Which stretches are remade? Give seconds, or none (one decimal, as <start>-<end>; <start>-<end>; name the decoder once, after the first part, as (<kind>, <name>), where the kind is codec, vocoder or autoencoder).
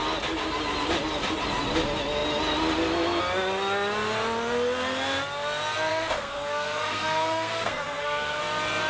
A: 5.9-8.4 (codec, SNAC)